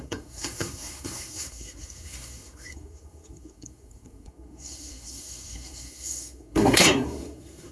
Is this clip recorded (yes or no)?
no